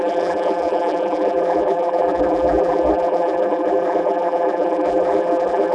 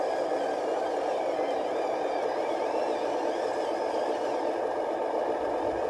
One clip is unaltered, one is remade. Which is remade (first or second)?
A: first